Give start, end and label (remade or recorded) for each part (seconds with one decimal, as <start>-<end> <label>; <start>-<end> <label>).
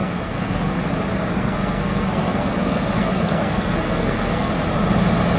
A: 0.0-0.8 remade; 0.8-1.3 recorded; 1.3-4.5 remade; 4.5-5.4 recorded